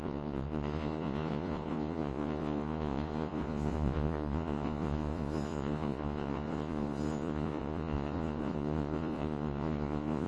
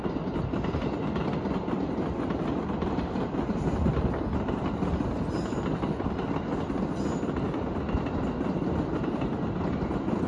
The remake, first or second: first